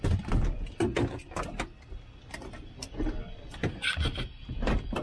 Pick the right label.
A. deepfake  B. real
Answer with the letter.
B